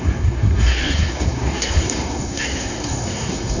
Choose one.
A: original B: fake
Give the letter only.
B